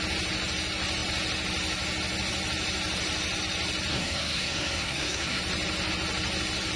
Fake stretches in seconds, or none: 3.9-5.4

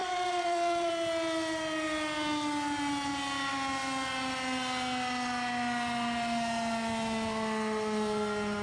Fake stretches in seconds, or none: 0.0-0.9